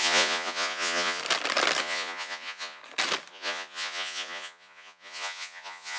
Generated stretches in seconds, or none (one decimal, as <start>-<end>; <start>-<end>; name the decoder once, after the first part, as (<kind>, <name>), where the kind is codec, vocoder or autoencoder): 0.0-1.2 (vocoder, Vocos); 1.8-2.8; 3.3-6.0